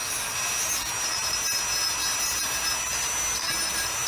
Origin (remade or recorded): recorded